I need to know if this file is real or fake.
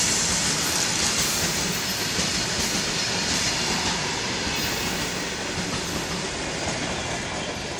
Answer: real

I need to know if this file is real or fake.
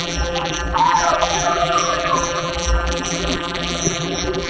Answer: fake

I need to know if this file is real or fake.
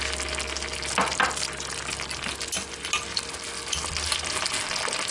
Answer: real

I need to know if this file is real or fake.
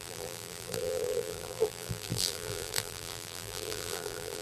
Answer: fake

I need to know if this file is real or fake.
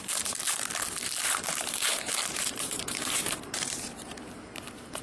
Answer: fake